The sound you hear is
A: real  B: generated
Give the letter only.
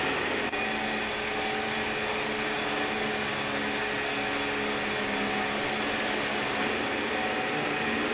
A